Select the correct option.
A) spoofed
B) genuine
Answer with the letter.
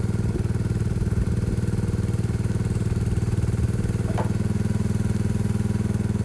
B